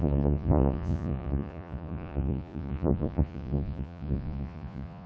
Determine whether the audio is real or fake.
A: fake